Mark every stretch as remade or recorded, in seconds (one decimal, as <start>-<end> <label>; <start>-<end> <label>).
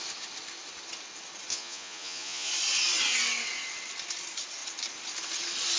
0.0-1.5 recorded; 1.5-2.5 remade; 2.5-5.8 recorded